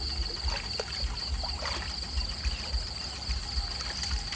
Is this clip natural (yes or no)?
yes